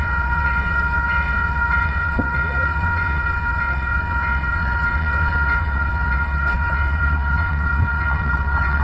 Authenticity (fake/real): fake